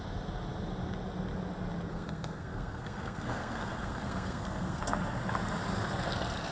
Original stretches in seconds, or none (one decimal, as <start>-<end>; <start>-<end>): 0.0-1.9; 4.8-6.5